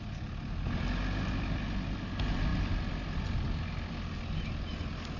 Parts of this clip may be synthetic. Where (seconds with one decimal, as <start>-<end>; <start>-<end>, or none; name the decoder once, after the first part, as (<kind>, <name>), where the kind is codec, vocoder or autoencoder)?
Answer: none